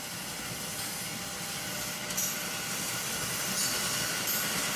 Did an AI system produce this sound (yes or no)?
no